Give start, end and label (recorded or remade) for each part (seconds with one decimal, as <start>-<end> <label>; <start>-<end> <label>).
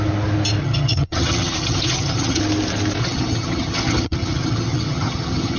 0.0-0.6 recorded; 0.6-2.4 remade; 2.4-3.0 recorded; 3.0-5.6 remade